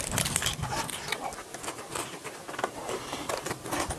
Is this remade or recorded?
recorded